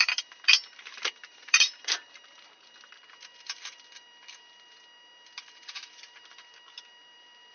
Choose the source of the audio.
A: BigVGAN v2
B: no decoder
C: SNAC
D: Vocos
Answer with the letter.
A